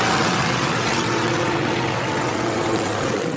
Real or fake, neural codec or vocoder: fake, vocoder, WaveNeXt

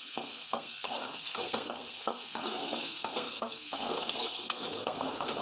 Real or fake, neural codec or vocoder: fake, codec, SNAC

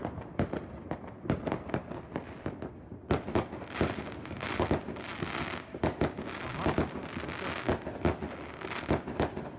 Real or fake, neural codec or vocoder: real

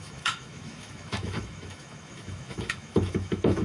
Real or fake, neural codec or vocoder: fake, autoencoder, DAC-VAE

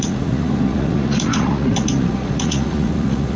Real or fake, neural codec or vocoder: fake, vocoder, Vocos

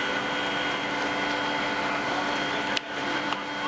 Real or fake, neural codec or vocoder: real